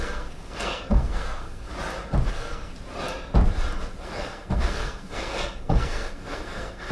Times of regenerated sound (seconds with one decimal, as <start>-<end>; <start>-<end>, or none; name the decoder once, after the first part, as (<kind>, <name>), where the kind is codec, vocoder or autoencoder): 0.0-1.7 (codec, SNAC); 2.3-2.7; 4.0-6.9